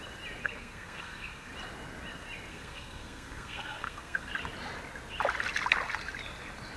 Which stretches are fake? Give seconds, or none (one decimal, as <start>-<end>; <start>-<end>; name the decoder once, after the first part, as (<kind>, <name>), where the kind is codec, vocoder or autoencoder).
0.4-1.5 (codec, SNAC); 2.5-4.3